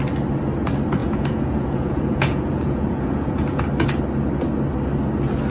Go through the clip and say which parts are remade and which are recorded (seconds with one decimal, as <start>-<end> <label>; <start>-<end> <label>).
0.0-1.0 recorded; 1.0-3.6 remade; 3.6-5.5 recorded